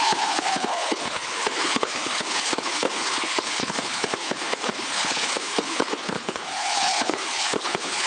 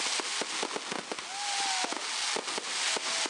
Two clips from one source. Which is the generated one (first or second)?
first